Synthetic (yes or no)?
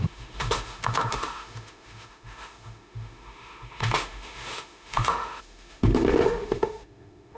yes